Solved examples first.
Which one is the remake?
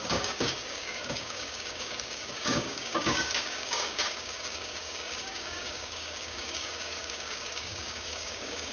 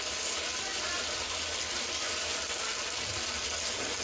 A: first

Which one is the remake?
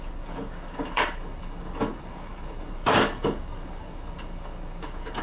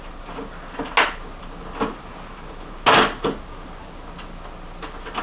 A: first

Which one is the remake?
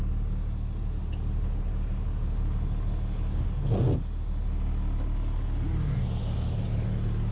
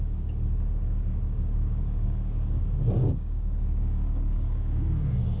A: second